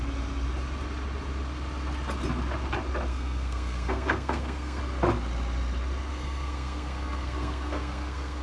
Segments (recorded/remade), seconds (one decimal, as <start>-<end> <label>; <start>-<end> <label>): 0.0-3.1 recorded; 3.1-4.8 remade; 4.8-6.1 recorded; 6.1-8.4 remade

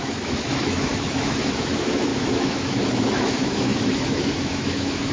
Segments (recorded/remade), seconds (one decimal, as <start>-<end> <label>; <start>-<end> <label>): 0.0-5.1 remade

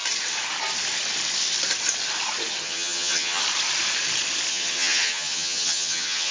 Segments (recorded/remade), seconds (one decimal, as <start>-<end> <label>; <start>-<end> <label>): 0.0-2.5 recorded; 2.5-3.4 remade; 3.4-4.5 recorded; 4.5-6.3 remade

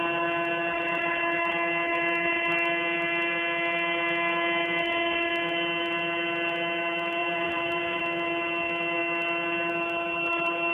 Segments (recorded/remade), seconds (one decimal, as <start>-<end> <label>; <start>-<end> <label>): 0.0-7.2 recorded; 7.2-8.0 remade; 8.0-10.7 recorded

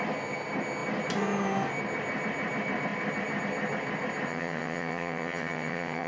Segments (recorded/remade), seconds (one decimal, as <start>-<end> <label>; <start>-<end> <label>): 0.0-4.3 recorded; 4.3-6.1 remade

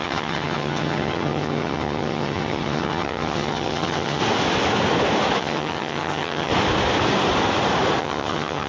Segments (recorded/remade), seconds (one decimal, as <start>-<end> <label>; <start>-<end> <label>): 0.0-4.2 remade; 4.2-5.4 recorded; 5.4-6.5 remade; 6.5-8.0 recorded; 8.0-8.7 remade

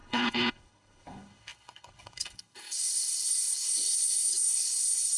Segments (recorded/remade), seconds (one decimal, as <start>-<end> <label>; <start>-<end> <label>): 0.0-5.2 remade

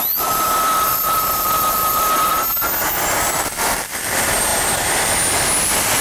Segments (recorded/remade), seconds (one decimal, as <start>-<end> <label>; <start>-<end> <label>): 0.0-2.3 remade; 2.3-3.2 recorded; 3.2-4.5 remade; 4.5-5.6 recorded; 5.6-6.0 remade